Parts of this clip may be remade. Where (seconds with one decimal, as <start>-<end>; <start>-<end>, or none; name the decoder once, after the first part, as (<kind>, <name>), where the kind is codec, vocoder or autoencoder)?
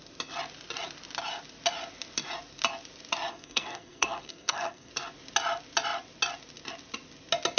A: 3.3-4.9 (codec, SNAC)